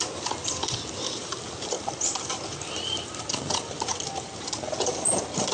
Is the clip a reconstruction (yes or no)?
no